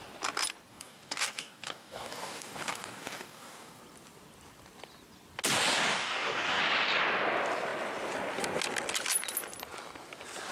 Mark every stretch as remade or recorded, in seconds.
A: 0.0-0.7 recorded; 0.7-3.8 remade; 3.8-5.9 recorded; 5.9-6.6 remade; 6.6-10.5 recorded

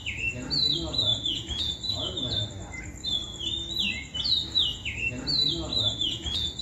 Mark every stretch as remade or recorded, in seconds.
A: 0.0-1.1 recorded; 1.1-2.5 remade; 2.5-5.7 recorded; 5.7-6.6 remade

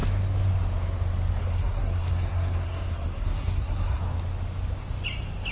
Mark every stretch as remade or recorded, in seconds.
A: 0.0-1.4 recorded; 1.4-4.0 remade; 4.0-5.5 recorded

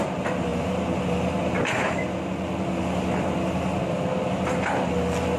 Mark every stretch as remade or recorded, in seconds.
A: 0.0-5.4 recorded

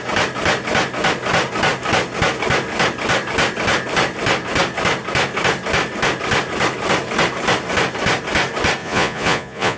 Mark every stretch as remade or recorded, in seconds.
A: 0.0-8.8 recorded; 8.8-9.8 remade

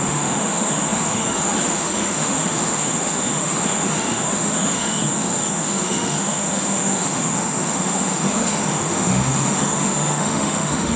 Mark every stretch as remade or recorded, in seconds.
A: 0.0-11.0 remade